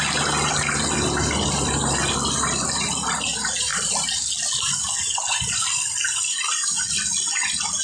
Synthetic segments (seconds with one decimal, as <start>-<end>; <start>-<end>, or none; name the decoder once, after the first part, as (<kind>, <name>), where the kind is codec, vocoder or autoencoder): none